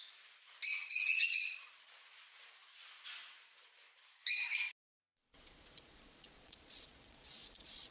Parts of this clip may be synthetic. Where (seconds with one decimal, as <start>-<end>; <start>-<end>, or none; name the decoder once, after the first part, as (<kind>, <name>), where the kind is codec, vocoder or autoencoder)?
0.8-1.9 (vocoder, Vocos); 5.0-7.9